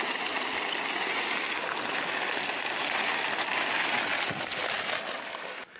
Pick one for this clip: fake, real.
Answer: real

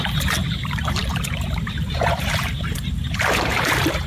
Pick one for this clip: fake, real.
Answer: fake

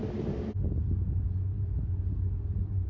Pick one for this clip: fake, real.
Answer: real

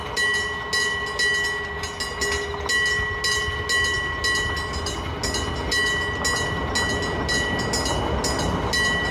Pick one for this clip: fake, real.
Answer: real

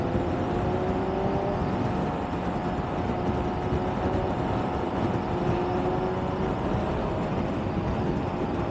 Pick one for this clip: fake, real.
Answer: real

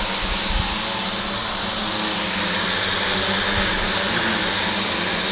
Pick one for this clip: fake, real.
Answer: real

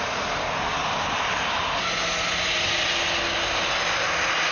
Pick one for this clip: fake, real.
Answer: real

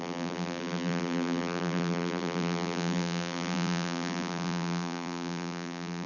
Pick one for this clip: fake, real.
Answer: fake